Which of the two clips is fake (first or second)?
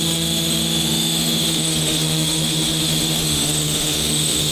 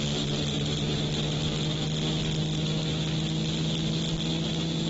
first